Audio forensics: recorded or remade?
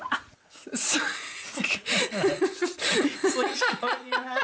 remade